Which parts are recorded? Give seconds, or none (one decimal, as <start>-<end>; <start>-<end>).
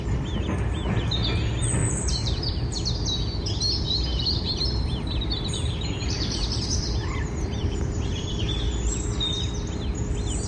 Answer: 0.0-1.8; 2.5-4.1; 8.5-10.5